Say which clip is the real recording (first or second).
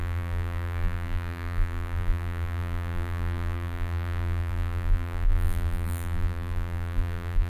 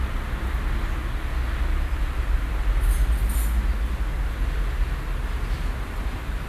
second